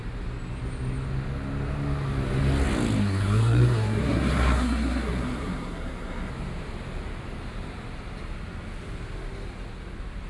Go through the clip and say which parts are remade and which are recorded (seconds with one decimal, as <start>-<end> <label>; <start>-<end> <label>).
0.0-3.0 recorded; 3.0-6.3 remade; 6.3-10.3 recorded